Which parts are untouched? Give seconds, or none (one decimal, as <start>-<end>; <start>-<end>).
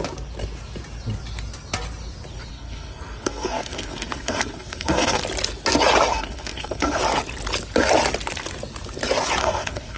0.0-2.5; 5.2-6.1; 7.0-9.4